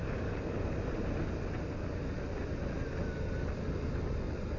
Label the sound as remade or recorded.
recorded